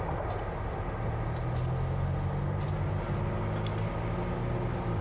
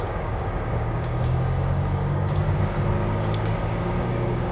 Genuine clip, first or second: first